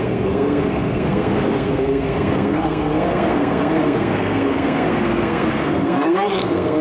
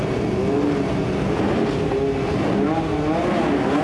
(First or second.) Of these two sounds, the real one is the second